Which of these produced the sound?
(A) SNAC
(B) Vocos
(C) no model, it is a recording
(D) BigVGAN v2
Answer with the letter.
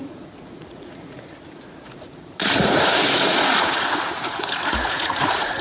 B